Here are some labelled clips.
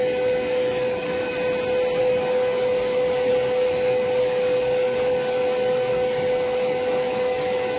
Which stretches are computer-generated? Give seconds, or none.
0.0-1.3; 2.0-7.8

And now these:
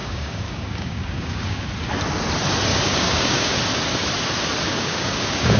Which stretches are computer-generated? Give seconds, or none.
0.0-1.7; 2.7-3.6; 4.6-5.6